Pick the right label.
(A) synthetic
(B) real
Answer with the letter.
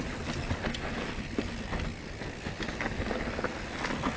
B